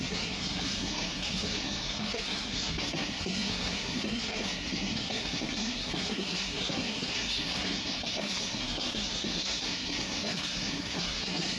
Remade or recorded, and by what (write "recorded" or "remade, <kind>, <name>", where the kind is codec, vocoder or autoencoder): remade, codec, SNAC